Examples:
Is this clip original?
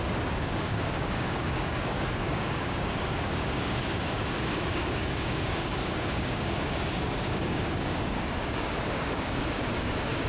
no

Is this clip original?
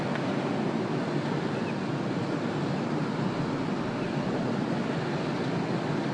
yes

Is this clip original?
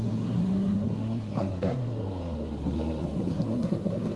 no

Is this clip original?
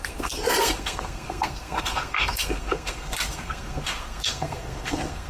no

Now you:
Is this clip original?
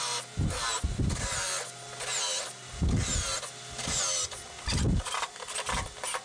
yes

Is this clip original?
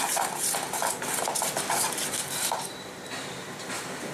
yes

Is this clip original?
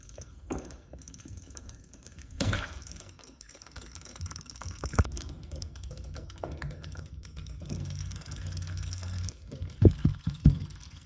no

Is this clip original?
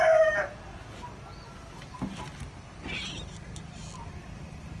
yes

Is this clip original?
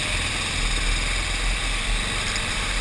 yes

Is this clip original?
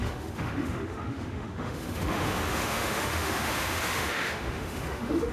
no